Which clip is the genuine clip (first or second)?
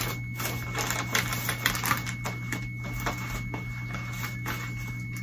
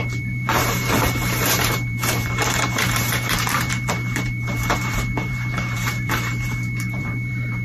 first